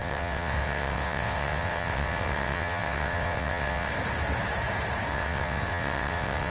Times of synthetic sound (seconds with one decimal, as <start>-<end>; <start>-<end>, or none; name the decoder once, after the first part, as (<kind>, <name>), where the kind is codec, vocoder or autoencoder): 0.0-3.9 (vocoder, WaveNeXt); 5.1-6.5

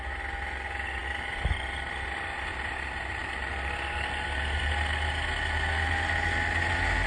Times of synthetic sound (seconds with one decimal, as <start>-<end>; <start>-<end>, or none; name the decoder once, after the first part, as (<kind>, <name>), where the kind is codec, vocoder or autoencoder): none

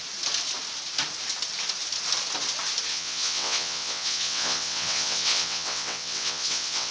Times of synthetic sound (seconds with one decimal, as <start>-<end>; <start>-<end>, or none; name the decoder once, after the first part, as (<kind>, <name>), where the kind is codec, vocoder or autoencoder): 2.9-6.9 (vocoder, WaveNeXt)

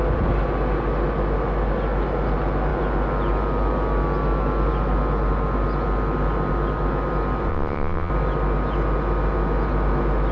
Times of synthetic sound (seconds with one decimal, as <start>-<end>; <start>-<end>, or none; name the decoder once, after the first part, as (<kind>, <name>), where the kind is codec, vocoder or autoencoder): 7.5-8.1 (vocoder, WaveNeXt)

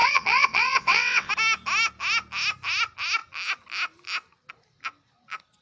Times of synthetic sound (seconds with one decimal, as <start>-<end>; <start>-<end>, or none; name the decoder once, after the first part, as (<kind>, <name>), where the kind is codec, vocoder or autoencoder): 0.0-1.3 (vocoder, WaveNeXt)

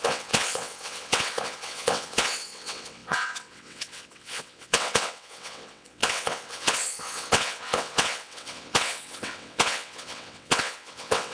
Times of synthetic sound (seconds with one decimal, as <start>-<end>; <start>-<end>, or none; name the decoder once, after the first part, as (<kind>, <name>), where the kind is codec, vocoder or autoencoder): 0.0-11.3 (vocoder, WaveNeXt)

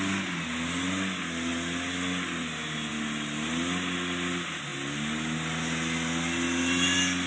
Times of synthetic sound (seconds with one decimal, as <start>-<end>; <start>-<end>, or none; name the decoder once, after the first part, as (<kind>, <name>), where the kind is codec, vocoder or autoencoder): none